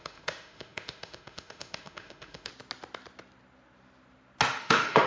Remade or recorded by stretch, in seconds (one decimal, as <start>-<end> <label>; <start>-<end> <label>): 0.0-2.5 remade; 2.5-4.6 recorded; 4.6-5.1 remade